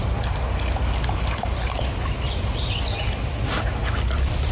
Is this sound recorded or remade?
recorded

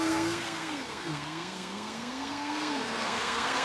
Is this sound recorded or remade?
remade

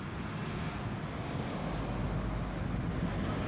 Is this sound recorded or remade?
recorded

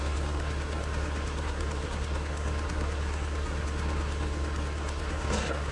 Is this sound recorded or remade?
remade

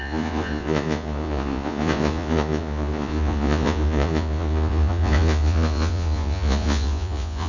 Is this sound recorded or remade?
remade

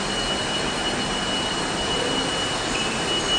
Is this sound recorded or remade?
recorded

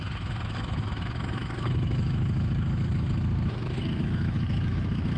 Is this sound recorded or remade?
remade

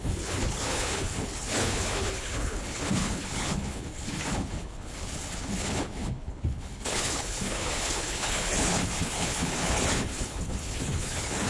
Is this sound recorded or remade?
remade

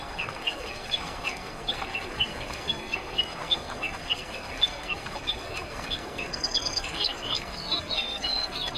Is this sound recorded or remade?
remade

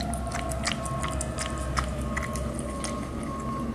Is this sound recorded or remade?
recorded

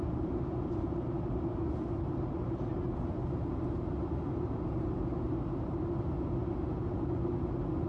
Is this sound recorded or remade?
recorded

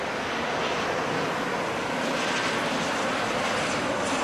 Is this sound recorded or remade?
recorded